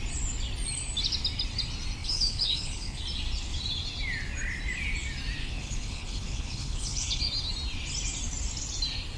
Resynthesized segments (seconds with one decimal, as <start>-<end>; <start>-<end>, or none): 2.0-3.0; 5.4-7.2